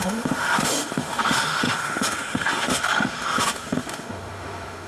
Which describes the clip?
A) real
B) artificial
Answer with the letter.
B